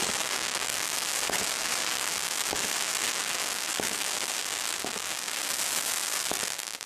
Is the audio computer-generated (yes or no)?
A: yes